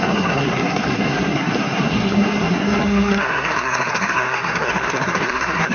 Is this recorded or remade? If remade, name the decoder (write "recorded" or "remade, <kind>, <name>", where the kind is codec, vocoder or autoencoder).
remade, codec, SNAC